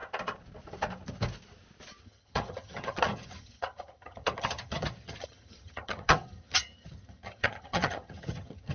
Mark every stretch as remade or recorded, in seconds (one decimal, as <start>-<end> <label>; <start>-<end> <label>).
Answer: 0.0-2.0 recorded; 2.0-8.7 remade